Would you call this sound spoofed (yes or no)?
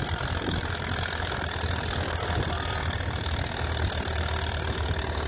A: no